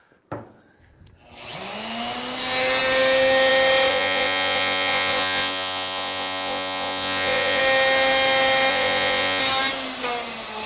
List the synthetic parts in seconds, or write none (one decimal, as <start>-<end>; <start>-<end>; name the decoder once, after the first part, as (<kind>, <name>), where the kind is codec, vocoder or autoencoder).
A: 3.9-7.6 (vocoder, Vocos); 8.7-9.4